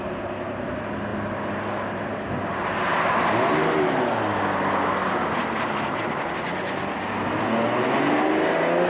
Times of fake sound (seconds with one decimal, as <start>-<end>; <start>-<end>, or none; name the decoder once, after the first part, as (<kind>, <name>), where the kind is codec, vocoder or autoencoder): none